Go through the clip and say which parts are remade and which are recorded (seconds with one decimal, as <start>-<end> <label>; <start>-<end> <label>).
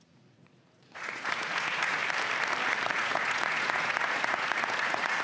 0.0-2.0 remade; 2.0-2.9 recorded; 2.9-5.2 remade